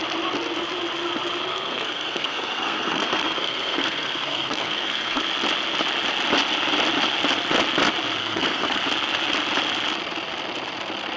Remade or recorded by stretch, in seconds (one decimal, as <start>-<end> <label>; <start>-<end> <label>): 0.0-1.5 recorded; 1.5-5.2 remade; 5.2-8.2 recorded; 8.2-8.8 remade; 8.8-11.2 recorded